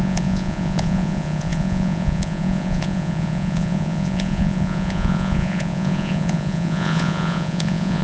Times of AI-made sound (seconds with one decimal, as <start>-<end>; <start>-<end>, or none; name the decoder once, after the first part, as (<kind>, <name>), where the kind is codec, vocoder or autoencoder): 0.0-8.0 (vocoder, Vocos)

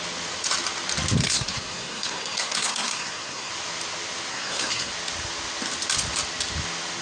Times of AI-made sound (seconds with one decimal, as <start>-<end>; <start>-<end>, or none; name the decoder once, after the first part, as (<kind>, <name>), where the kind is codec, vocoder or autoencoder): 1.2-3.5 (codec, SNAC); 4.3-4.9

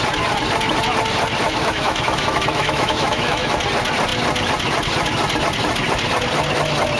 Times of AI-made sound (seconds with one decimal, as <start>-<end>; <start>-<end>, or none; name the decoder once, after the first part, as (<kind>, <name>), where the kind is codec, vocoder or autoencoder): 1.6-3.5 (autoencoder, DAC-VAE)

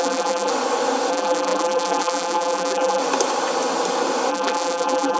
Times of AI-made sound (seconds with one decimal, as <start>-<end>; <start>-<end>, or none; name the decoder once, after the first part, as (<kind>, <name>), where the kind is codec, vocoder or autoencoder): 0.0-0.5 (vocoder, BigVGAN v2); 1.1-3.0; 4.3-5.2

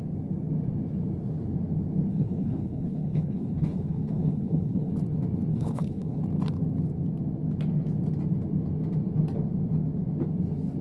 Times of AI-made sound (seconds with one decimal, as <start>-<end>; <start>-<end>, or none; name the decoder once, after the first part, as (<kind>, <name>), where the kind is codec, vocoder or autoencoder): 2.1-4.9 (codec, HILCodec); 5.5-6.2

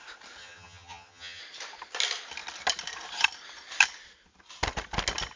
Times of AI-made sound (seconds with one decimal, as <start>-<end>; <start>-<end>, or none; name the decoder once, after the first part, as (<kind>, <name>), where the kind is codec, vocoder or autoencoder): 0.4-1.4 (vocoder, HiFi-GAN)